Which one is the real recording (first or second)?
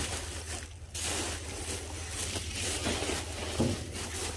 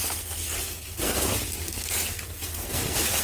first